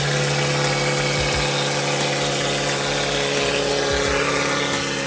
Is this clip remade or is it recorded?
recorded